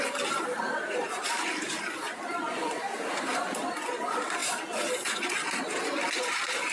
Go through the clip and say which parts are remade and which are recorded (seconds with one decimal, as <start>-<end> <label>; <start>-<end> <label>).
0.0-4.4 remade; 4.4-5.8 recorded; 5.8-6.7 remade